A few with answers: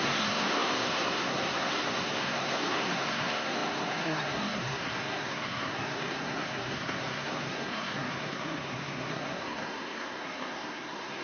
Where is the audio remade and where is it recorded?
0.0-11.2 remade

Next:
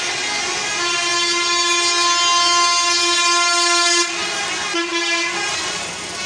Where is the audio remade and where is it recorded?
0.0-6.3 recorded

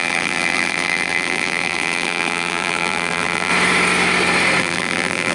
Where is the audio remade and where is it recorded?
0.0-3.5 remade; 3.5-4.6 recorded; 4.6-5.3 remade

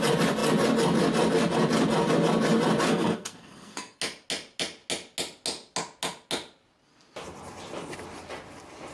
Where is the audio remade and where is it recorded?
0.0-2.9 recorded; 2.9-4.0 remade; 4.0-8.9 recorded

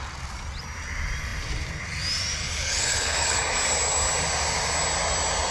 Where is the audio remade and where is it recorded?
0.0-2.4 recorded; 2.4-3.4 remade; 3.4-5.5 recorded

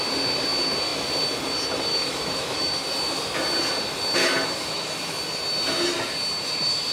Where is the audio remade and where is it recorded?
0.0-1.9 recorded; 1.9-2.7 remade; 2.7-4.2 recorded; 4.2-5.2 remade; 5.2-6.9 recorded

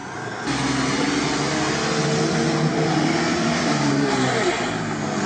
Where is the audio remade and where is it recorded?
0.0-3.3 recorded; 3.3-4.5 remade; 4.5-5.3 recorded